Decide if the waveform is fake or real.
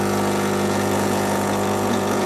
fake